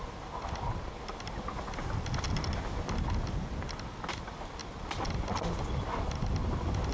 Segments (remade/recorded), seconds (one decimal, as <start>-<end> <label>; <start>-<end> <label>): 0.0-6.9 recorded

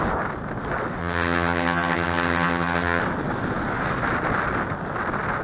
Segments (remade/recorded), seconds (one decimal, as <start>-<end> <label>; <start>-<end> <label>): 0.0-1.0 recorded; 1.0-3.0 remade; 3.0-5.4 recorded

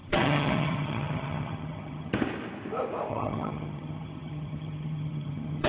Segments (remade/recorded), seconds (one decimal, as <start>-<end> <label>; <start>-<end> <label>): 0.0-2.1 remade; 2.1-3.1 recorded; 3.1-5.7 remade